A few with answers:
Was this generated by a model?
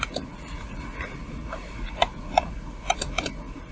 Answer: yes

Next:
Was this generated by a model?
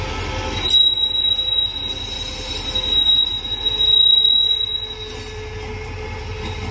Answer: no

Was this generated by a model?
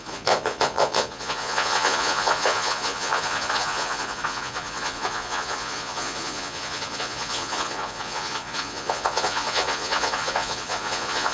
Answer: yes